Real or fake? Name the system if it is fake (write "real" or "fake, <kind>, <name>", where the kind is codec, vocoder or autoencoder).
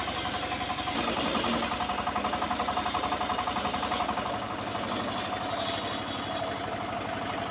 real